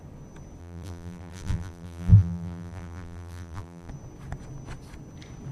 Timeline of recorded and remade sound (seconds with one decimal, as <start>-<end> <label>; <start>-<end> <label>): 0.0-0.6 recorded; 0.6-3.9 remade; 3.9-5.5 recorded